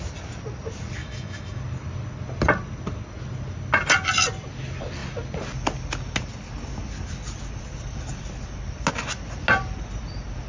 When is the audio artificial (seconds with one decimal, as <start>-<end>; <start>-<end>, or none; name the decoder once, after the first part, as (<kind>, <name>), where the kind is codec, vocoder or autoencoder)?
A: 1.0-1.6 (autoencoder, DAC-VAE)